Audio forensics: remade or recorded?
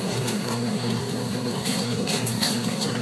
remade